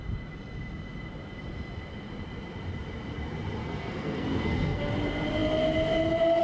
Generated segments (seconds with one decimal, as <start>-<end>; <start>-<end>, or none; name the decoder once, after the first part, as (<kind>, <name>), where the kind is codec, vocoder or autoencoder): 3.6-4.9 (codec, SNAC)